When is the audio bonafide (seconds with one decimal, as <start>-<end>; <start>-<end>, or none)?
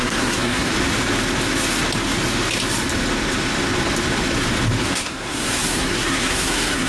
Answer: 0.7-4.8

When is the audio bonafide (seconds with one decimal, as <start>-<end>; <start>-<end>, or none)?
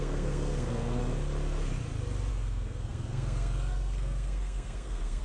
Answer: 1.0-2.3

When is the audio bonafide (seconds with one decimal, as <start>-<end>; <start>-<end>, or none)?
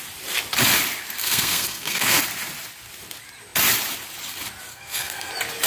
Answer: 0.0-1.2; 2.2-4.7; 5.3-5.7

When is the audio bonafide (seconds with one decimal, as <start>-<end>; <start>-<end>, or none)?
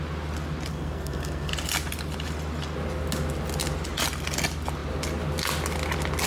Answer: 0.0-0.7; 1.5-6.3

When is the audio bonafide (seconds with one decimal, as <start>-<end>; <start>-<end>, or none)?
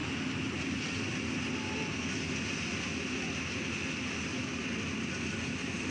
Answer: 0.0-5.9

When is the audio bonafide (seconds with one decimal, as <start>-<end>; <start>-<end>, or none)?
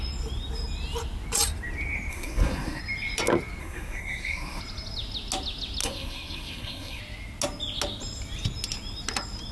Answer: 0.0-2.1; 2.8-3.6; 4.6-5.8; 7.0-9.5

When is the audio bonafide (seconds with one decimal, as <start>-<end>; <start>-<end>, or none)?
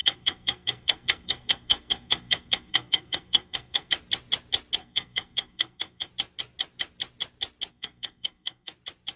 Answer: 3.9-4.8; 6.1-7.7; 8.7-9.2